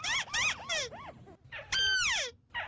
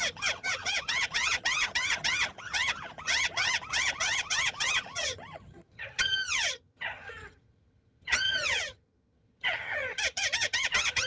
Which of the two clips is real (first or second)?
first